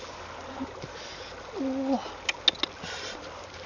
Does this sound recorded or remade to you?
recorded